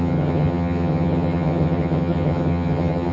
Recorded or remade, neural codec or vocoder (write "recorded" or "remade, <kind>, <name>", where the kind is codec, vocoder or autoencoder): remade, vocoder, HiFi-GAN